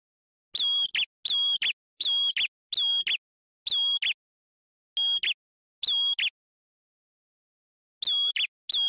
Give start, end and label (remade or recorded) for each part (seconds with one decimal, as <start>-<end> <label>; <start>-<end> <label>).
0.0-8.9 recorded